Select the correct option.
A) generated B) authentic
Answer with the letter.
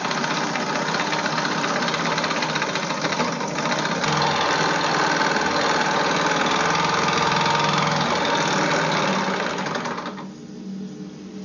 B